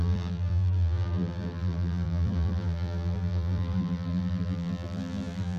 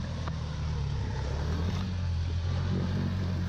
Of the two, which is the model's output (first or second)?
first